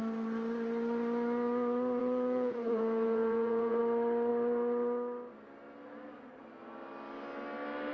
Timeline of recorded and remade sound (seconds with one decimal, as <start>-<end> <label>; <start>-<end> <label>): 0.0-2.0 recorded; 2.0-3.8 remade; 3.8-7.9 recorded